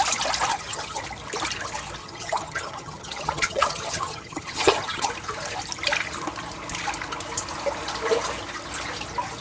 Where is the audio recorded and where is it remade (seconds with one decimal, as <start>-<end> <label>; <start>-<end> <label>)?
0.0-0.5 recorded; 0.5-1.0 remade; 1.0-2.0 recorded; 2.0-5.1 remade; 5.1-9.4 recorded